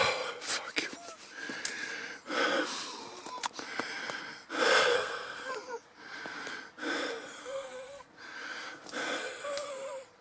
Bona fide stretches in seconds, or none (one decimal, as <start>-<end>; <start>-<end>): 0.0-4.9; 5.5-7.4; 8.1-10.2